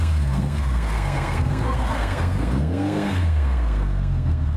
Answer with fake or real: fake